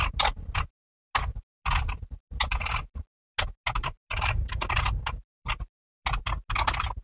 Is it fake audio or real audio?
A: real